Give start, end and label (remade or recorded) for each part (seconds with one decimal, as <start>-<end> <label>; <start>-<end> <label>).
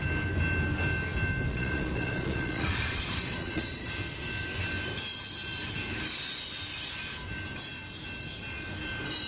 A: 0.0-1.5 recorded; 1.5-3.9 remade; 3.9-9.3 recorded